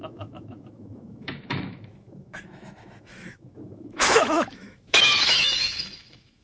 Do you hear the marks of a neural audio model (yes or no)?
yes